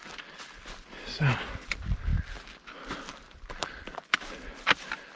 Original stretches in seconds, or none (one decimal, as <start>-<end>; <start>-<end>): 0.0-5.2